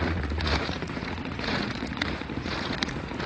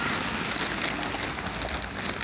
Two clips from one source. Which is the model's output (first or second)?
first